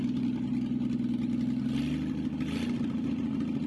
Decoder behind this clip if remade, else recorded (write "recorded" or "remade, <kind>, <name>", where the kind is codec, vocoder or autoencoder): recorded